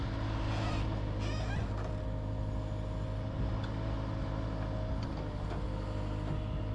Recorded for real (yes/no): yes